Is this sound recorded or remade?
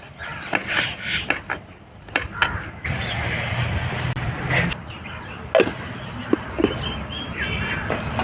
recorded